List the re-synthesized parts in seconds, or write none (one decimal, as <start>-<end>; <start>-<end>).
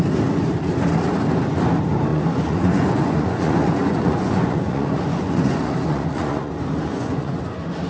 2.1-6.5; 6.9-7.4